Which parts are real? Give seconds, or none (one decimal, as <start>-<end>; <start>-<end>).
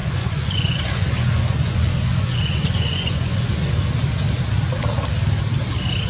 3.7-6.1